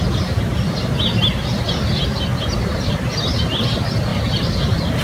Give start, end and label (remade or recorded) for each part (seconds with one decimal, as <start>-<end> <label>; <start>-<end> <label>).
0.0-5.0 recorded